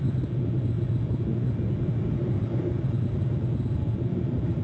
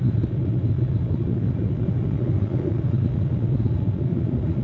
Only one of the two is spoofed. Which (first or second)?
second